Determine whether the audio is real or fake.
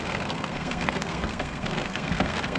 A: fake